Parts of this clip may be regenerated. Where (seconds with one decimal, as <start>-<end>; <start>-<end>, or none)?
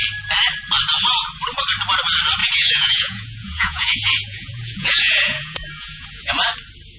2.4-6.3